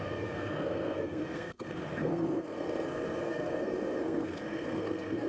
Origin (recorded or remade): remade